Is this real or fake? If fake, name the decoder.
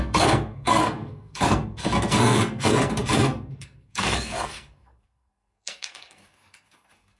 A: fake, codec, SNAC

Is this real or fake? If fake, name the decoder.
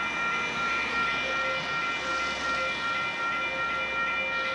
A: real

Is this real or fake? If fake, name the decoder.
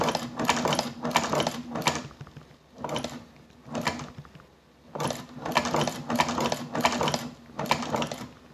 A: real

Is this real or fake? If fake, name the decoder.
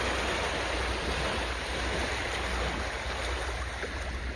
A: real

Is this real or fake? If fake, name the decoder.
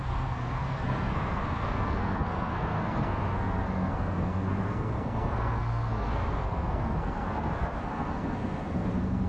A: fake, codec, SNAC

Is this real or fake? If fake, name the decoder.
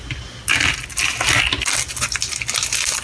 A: real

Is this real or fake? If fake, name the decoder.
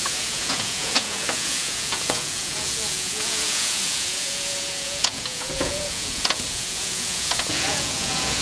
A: fake, vocoder, Vocos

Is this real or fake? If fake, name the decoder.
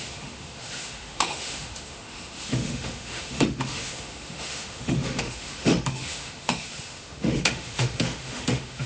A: fake, autoencoder, DAC-VAE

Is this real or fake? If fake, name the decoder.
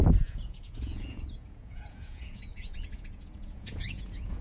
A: fake, vocoder, Vocos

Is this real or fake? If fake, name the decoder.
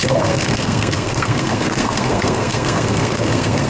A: fake, codec, SNAC